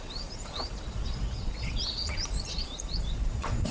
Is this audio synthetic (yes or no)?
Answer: yes